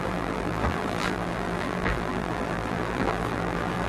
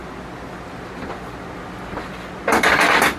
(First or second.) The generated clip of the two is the first